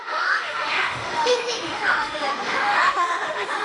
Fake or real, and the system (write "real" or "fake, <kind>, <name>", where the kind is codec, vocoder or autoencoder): fake, autoencoder, DAC-VAE